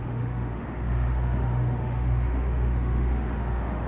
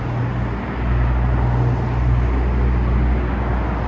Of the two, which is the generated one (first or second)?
first